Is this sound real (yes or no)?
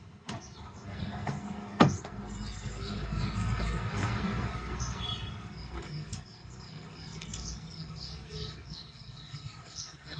no